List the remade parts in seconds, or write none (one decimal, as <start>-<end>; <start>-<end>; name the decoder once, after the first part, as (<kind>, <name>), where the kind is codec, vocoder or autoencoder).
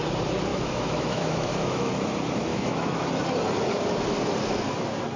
0.5-1.9 (autoencoder, DAC-VAE); 2.5-3.1